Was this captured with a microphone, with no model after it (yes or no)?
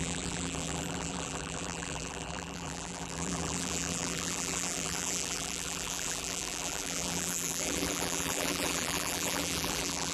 no